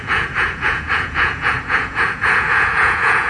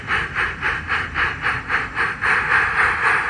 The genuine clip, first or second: second